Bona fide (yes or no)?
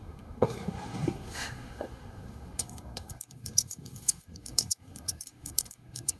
no